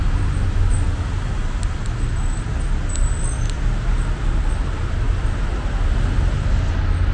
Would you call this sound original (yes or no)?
yes